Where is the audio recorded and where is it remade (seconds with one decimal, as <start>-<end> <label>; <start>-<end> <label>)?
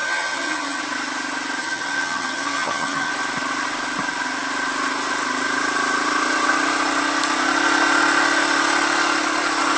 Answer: 0.0-0.8 remade; 0.8-1.6 recorded; 1.6-3.1 remade; 3.1-9.8 recorded